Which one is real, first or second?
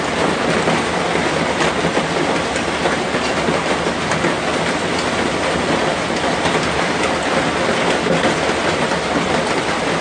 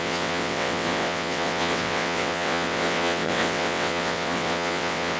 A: first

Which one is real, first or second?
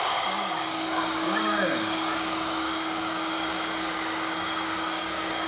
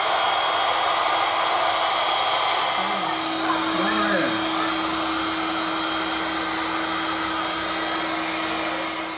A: second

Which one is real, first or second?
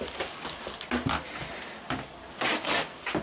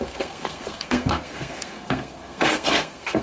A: first